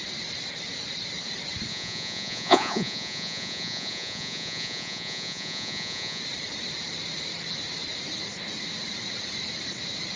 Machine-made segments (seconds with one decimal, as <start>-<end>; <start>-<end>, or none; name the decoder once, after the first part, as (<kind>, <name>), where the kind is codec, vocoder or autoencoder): 1.7-6.2 (vocoder, Vocos)